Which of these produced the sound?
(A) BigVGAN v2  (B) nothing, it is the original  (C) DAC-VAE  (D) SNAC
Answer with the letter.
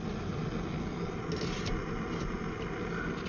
B